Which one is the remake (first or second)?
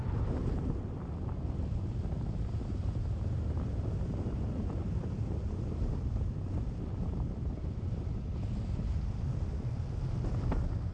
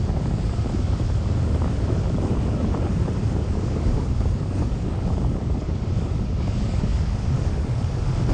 second